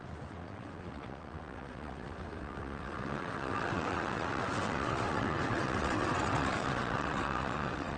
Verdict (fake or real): fake